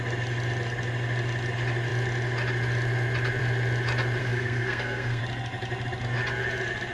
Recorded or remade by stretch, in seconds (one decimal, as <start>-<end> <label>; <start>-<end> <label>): 0.0-4.2 recorded; 4.2-5.2 remade; 5.2-6.9 recorded